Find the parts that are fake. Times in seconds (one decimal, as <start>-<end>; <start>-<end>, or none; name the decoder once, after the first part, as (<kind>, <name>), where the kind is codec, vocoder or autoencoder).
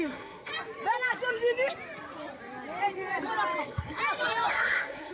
0.0-0.5 (codec, SNAC); 3.6-4.0; 4.5-5.1